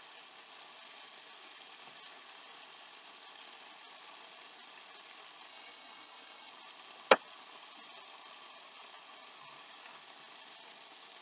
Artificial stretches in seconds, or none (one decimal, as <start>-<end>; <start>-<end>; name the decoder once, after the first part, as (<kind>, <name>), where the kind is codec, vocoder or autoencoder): 5.5-6.5 (codec, DAC)